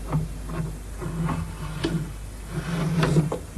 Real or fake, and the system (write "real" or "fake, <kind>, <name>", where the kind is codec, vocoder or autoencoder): real